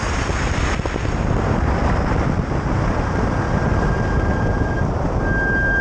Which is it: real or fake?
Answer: real